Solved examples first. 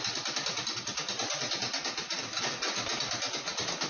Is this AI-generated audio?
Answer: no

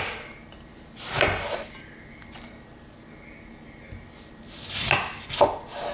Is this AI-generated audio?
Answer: no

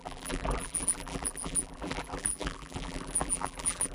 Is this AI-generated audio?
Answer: yes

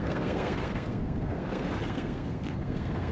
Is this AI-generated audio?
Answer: yes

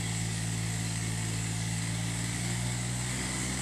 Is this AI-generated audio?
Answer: yes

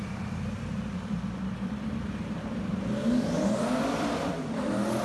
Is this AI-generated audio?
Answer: yes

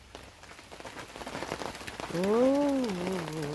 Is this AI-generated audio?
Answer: no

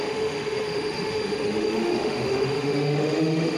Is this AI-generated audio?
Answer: yes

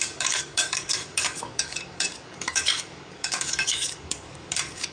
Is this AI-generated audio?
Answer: yes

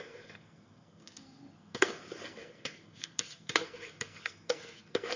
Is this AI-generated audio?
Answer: yes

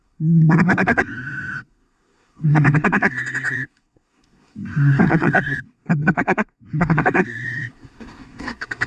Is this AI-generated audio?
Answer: yes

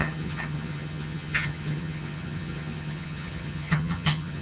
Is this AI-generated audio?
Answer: yes